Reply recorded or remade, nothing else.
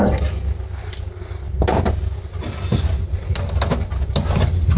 recorded